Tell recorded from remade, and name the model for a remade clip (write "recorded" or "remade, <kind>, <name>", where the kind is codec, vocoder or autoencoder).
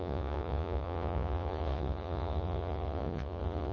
remade, vocoder, Vocos